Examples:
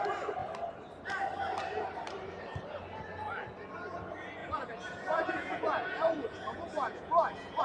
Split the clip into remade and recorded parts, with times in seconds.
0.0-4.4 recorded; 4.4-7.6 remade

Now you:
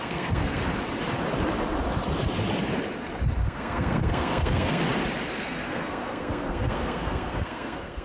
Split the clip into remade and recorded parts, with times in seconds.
0.0-0.6 remade; 0.6-3.4 recorded; 3.4-4.8 remade; 4.8-5.4 recorded; 5.4-8.0 remade

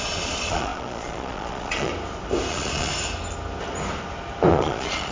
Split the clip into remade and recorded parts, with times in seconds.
0.0-1.9 remade; 1.9-2.5 recorded; 2.5-2.9 remade; 2.9-4.5 recorded; 4.5-5.1 remade

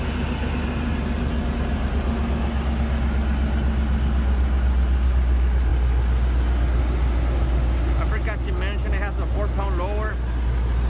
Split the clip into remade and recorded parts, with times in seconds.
0.0-10.9 recorded